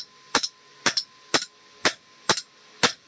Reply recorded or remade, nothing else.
recorded